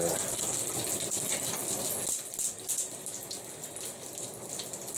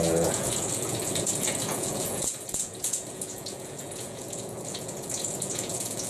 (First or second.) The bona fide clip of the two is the first